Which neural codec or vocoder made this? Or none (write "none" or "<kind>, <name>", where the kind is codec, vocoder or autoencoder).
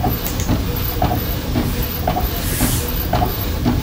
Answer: none